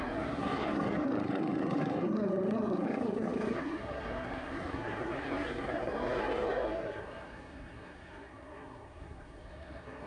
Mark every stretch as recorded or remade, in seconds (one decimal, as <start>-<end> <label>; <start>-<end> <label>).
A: 0.0-10.1 remade